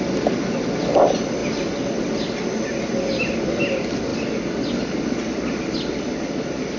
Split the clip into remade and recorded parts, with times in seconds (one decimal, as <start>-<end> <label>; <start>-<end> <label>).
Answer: 0.0-6.8 recorded